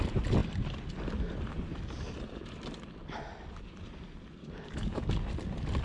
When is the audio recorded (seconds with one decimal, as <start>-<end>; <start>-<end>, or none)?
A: 0.0-4.4; 5.2-5.8